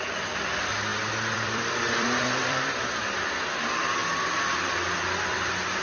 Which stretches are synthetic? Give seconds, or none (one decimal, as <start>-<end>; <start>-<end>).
0.0-4.0; 5.3-5.8